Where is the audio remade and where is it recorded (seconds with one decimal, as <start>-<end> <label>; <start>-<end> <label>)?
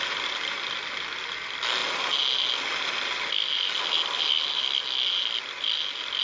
0.0-6.2 recorded